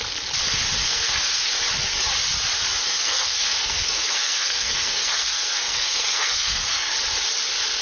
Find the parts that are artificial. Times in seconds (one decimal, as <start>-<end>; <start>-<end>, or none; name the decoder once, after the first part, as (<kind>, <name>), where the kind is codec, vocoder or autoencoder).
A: 0.8-1.5 (codec, SNAC); 2.8-6.9